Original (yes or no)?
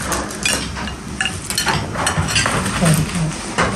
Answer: yes